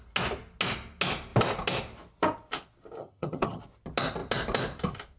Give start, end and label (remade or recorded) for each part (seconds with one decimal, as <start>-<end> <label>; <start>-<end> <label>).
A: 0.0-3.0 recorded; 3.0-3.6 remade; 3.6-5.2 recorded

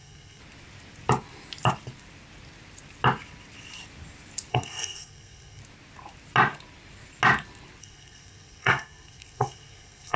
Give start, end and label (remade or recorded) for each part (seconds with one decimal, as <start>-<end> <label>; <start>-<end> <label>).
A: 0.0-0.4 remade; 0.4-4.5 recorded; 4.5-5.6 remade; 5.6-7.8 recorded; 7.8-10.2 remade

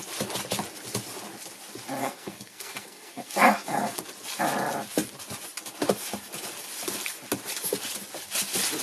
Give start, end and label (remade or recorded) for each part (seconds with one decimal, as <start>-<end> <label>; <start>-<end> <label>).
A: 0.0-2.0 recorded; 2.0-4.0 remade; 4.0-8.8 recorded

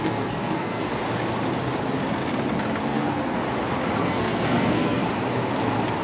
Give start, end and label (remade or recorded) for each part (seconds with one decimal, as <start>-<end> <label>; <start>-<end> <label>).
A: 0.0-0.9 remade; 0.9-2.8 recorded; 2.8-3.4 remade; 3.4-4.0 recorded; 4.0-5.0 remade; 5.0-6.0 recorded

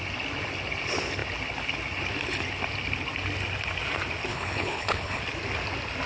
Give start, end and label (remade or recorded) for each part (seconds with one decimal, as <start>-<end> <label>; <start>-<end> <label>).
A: 0.0-4.3 recorded; 4.3-5.2 remade; 5.2-6.1 recorded

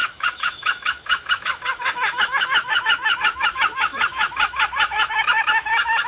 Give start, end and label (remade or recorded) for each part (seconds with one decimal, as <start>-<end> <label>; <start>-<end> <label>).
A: 0.0-6.1 remade